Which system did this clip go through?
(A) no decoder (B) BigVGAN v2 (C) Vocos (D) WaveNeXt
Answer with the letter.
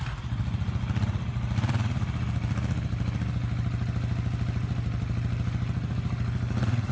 A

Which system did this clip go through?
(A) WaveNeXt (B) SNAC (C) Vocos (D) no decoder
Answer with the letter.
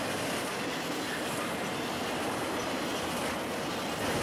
D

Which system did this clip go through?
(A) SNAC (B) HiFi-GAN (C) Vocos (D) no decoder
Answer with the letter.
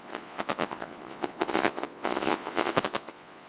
C